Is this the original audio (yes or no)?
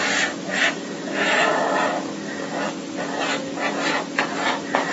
yes